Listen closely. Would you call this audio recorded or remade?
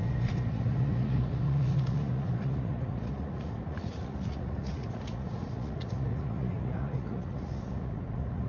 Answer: remade